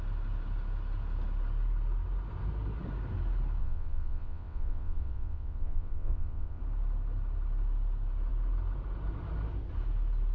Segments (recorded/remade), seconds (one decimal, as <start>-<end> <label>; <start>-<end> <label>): 0.0-3.6 recorded; 3.6-6.6 remade; 6.6-10.3 recorded